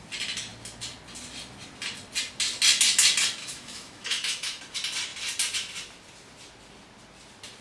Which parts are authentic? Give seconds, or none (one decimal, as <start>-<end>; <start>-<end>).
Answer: 0.0-3.4; 4.6-7.6